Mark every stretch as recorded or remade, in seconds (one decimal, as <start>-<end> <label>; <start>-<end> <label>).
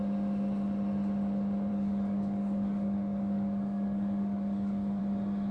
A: 0.0-1.7 recorded; 1.7-5.0 remade; 5.0-5.5 recorded